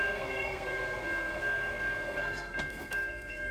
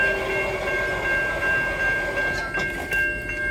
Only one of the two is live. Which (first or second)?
second